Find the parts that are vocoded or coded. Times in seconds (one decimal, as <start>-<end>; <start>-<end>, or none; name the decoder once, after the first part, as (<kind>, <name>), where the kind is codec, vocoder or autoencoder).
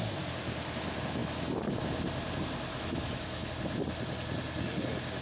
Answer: 2.7-3.5 (autoencoder, DAC-VAE)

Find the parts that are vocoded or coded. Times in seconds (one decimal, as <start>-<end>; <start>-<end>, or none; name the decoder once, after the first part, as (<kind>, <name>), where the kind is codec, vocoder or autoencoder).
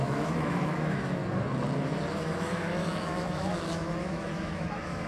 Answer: 0.0-1.2 (autoencoder, DAC-VAE); 2.1-5.1